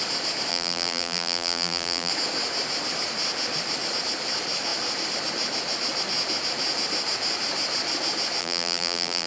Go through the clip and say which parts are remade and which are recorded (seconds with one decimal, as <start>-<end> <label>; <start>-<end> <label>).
0.0-0.5 recorded; 0.5-2.1 remade; 2.1-8.4 recorded; 8.4-9.3 remade